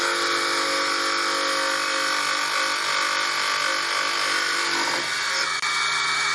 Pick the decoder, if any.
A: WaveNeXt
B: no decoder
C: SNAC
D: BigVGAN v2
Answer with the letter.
B